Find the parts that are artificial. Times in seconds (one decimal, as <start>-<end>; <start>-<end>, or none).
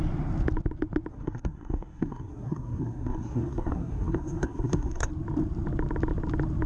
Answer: 1.1-5.1